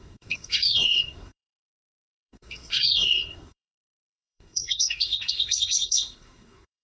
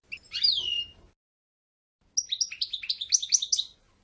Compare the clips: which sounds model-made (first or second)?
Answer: first